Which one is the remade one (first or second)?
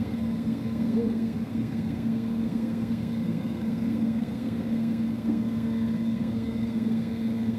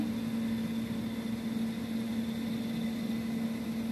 first